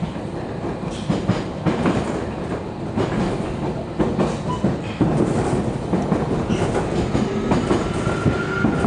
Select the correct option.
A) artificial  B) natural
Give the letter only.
B